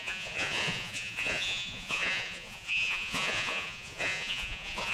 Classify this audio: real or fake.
fake